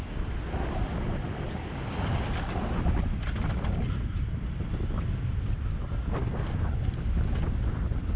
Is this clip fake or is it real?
real